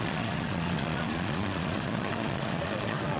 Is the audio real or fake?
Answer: fake